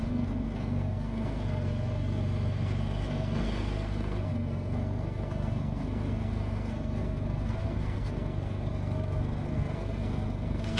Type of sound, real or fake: fake